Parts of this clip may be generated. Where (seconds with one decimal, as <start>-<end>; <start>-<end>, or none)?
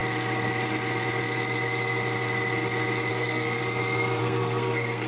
3.1-3.6; 4.2-5.1